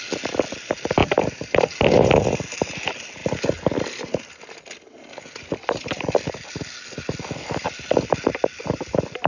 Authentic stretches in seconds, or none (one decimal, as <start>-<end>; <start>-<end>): 0.0-9.3